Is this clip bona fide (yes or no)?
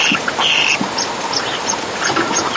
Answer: yes